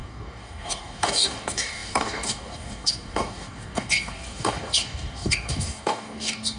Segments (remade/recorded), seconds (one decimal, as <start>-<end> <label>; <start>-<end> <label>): 0.0-6.6 remade